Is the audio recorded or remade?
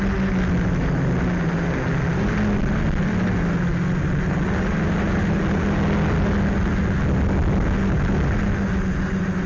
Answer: recorded